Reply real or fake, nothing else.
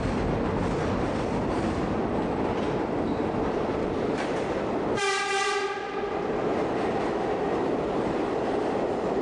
real